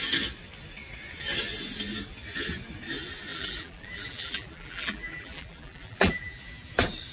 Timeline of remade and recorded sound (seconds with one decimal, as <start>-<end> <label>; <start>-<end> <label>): 0.0-3.3 recorded; 3.3-6.4 remade; 6.4-7.1 recorded